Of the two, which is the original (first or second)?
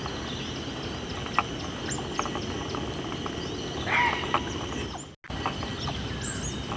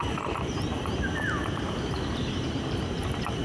first